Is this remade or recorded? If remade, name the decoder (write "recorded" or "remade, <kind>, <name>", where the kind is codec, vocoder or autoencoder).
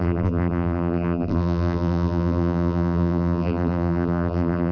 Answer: remade, vocoder, BigVGAN v2